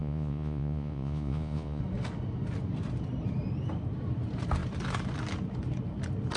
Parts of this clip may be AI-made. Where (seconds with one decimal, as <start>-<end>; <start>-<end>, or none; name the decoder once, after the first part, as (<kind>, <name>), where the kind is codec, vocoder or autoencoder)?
0.0-1.8 (vocoder, Vocos)